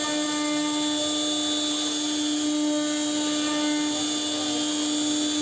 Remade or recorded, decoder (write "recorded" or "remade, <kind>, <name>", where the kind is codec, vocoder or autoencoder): recorded